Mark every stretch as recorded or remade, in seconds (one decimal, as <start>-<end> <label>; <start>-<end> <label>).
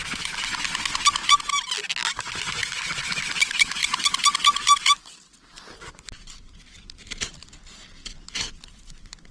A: 0.0-9.3 recorded